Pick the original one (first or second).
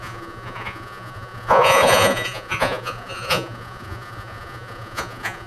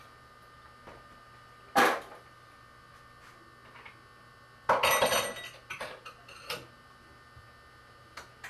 second